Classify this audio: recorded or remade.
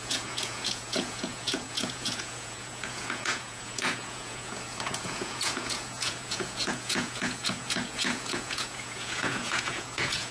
remade